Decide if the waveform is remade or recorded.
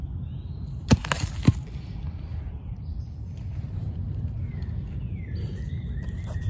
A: recorded